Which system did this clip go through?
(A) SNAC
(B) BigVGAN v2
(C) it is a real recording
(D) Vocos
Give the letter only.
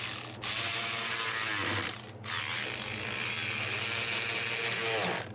C